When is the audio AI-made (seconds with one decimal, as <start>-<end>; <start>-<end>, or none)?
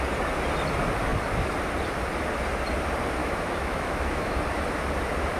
3.2-4.4